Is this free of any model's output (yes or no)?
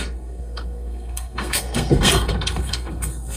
no